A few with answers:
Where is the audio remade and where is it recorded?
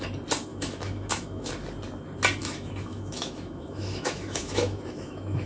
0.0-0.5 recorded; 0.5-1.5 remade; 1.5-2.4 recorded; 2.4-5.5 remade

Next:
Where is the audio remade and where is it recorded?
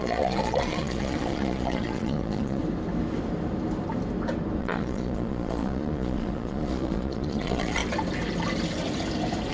0.0-2.6 remade; 2.6-4.6 recorded; 4.6-7.8 remade; 7.8-9.5 recorded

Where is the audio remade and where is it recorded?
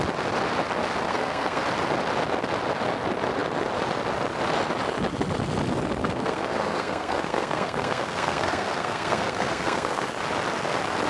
0.0-1.1 recorded; 1.1-1.6 remade; 1.6-6.0 recorded; 6.0-10.1 remade; 10.1-11.1 recorded